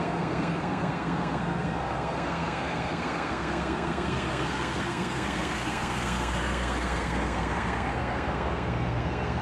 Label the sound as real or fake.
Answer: fake